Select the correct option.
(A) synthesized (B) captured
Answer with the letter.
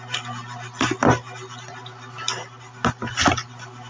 B